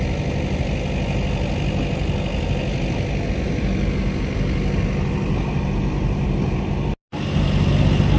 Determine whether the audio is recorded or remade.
recorded